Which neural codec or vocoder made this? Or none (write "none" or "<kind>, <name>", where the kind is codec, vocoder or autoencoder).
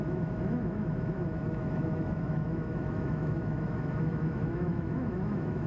autoencoder, DAC-VAE